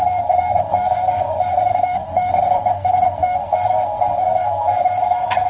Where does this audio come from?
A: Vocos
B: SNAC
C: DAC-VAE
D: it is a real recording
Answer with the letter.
B